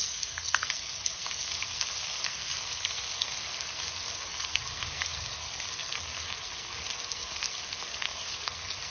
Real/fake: fake